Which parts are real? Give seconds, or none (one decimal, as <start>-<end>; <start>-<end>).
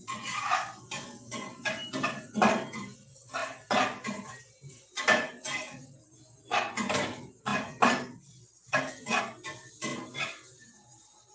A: 0.0-11.3